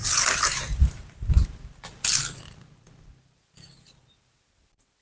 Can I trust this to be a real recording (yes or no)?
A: yes